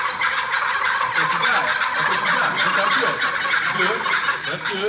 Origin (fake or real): real